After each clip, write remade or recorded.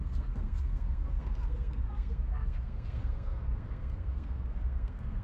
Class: remade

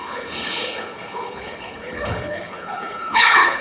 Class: remade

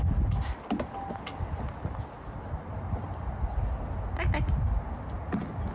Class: recorded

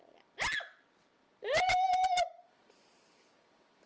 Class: recorded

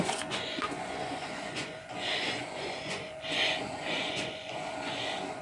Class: remade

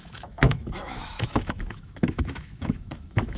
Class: remade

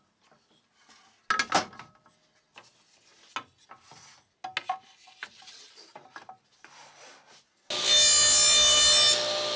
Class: recorded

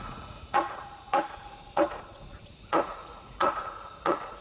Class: remade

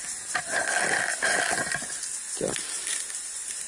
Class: recorded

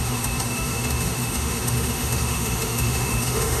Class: remade